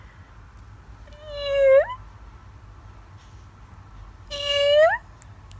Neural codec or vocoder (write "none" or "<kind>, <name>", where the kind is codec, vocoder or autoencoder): none